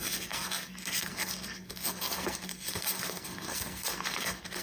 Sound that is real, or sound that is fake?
fake